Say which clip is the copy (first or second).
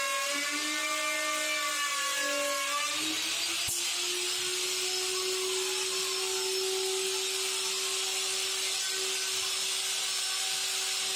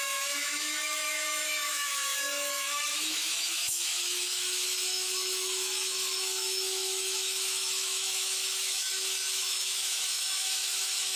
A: second